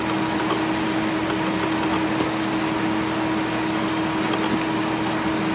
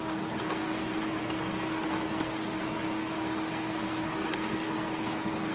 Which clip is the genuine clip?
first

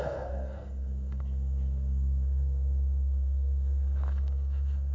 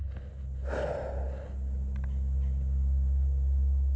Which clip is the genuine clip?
second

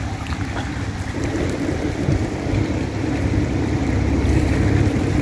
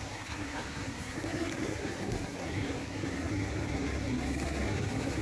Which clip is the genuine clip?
first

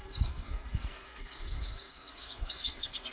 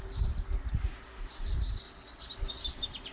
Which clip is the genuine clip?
second